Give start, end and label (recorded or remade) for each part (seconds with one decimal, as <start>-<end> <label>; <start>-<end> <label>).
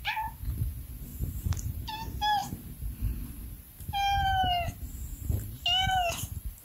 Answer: 0.0-1.1 recorded; 1.1-1.9 remade; 1.9-6.6 recorded